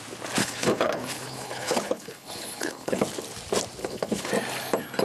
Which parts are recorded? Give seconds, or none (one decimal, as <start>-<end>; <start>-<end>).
0.0-0.4; 3.0-3.8; 4.3-5.0